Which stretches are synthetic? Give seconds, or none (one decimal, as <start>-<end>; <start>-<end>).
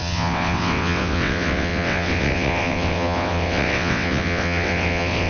0.0-5.3